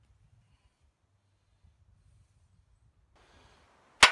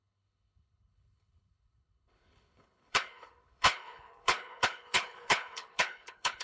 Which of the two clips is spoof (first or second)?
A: second